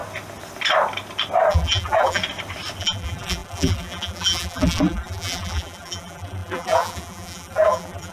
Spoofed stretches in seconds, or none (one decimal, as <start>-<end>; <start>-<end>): 1.5-2.2; 2.8-8.1